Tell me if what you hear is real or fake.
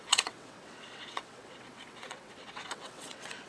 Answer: fake